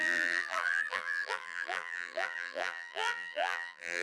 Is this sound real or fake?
fake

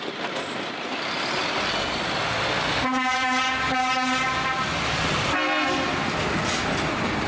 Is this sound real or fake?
real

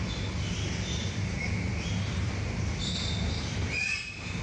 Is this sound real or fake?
fake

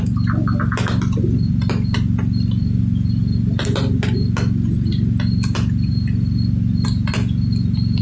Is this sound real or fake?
real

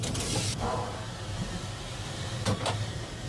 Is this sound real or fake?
fake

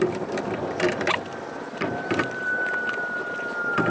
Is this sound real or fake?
fake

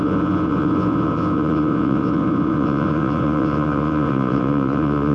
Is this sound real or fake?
fake